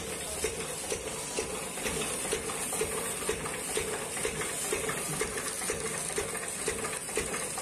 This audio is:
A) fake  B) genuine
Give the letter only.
B